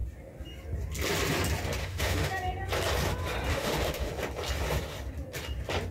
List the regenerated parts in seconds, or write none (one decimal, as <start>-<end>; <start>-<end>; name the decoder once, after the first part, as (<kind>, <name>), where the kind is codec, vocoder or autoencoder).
1.8-2.3 (autoencoder, DAC-VAE); 3.5-4.1